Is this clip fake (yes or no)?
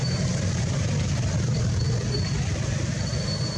yes